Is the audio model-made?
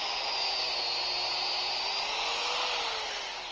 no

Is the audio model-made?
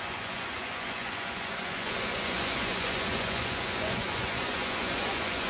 yes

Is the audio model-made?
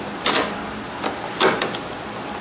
no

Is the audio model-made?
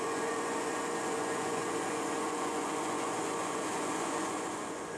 yes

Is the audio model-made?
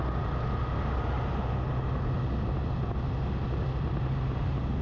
no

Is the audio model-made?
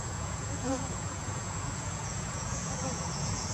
yes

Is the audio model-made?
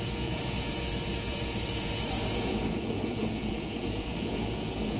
yes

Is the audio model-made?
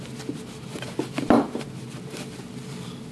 no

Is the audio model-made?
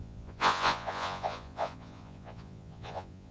yes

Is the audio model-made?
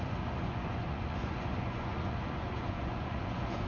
yes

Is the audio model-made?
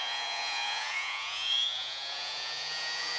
yes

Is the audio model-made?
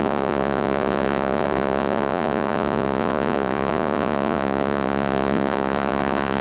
yes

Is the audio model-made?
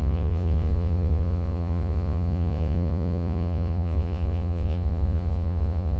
yes